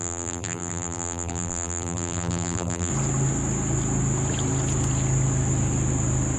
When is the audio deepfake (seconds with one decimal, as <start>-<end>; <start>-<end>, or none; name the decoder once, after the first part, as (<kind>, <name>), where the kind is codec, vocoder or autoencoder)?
0.0-2.9 (vocoder, BigVGAN v2)